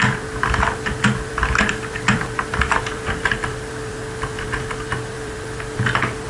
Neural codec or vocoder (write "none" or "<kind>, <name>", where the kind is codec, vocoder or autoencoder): vocoder, BigVGAN v2